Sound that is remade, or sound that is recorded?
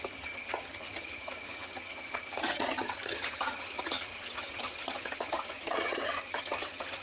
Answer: remade